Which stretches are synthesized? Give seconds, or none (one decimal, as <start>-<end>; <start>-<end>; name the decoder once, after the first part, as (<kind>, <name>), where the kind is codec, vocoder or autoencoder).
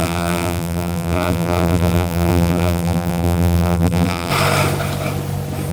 0.0-4.3 (vocoder, BigVGAN v2)